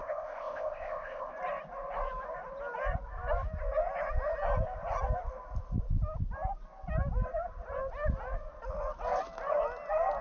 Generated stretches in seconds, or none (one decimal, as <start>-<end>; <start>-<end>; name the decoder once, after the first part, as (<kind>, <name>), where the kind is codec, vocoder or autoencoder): 0.0-1.3 (codec, ZipCodec)